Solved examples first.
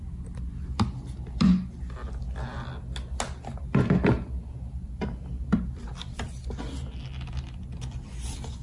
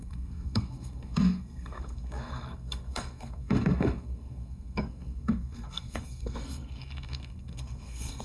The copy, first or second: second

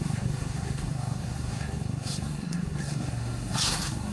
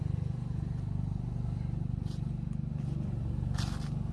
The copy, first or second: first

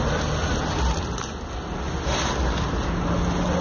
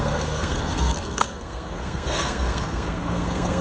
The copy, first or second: second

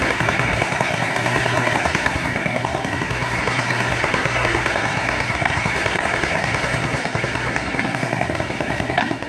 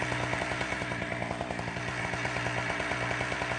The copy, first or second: first